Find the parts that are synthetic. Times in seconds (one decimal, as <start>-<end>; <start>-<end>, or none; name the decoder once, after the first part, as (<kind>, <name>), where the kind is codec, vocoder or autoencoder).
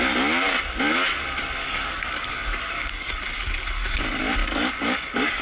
1.6-4.0 (codec, DAC); 4.4-5.4